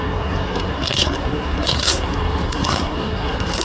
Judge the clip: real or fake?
fake